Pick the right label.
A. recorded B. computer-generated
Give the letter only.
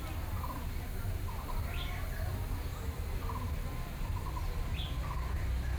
A